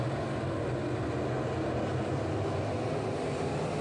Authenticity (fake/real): real